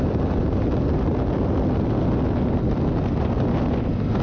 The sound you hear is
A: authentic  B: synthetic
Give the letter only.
A